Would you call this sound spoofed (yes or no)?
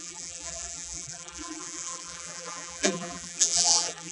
yes